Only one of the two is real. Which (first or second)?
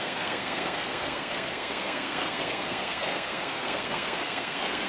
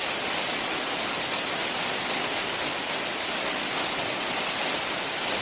second